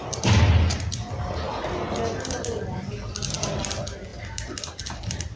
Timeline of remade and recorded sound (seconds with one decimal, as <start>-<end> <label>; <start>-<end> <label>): 0.0-5.4 recorded